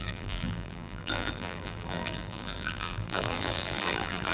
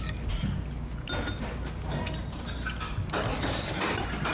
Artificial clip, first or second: first